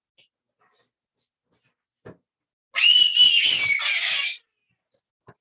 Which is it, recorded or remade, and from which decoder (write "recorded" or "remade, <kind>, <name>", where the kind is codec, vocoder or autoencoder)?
recorded